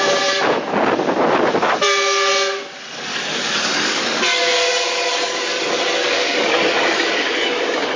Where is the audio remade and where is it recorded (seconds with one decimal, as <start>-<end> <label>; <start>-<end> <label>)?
0.0-3.1 recorded; 3.1-7.6 remade; 7.6-8.0 recorded